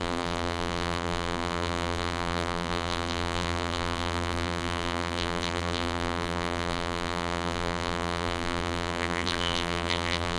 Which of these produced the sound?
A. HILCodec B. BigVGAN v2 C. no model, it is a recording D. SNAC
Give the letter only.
B